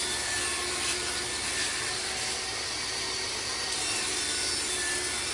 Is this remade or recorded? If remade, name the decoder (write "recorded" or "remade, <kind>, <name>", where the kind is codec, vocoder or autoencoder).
recorded